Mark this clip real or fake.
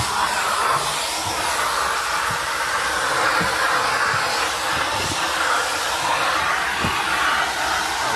real